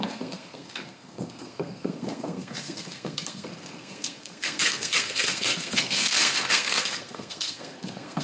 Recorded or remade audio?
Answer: remade